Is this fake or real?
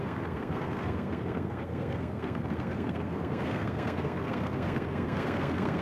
fake